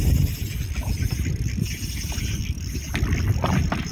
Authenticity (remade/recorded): remade